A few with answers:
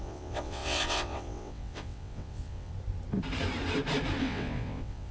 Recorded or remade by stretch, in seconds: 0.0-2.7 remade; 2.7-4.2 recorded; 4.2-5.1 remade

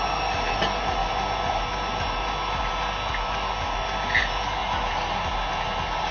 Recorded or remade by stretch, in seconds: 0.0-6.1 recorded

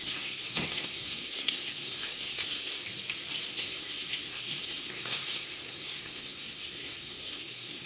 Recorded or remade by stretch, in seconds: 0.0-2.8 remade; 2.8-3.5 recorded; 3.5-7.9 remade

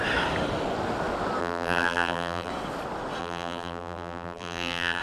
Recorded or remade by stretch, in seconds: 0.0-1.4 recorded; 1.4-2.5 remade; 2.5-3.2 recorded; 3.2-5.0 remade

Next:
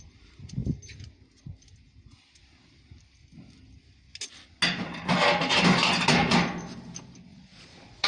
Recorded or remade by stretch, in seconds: 0.0-7.3 recorded; 7.3-8.1 remade

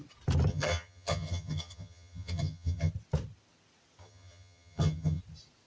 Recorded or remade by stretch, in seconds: 0.0-0.5 recorded; 0.5-2.9 remade; 2.9-4.0 recorded; 4.0-5.2 remade; 5.2-5.7 recorded

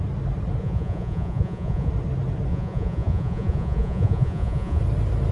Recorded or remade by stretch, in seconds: 0.0-0.6 recorded; 0.6-1.9 remade; 1.9-2.5 recorded; 2.5-4.8 remade; 4.8-5.3 recorded